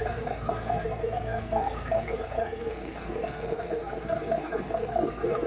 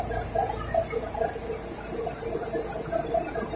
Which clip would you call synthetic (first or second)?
first